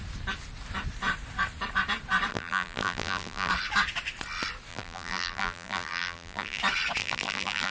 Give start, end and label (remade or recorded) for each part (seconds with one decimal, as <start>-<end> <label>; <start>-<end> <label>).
0.0-2.3 recorded; 2.3-3.5 remade; 3.5-4.7 recorded; 4.7-6.6 remade; 6.6-7.0 recorded; 7.0-7.7 remade